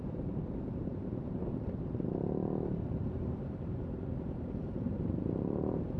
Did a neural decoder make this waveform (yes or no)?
yes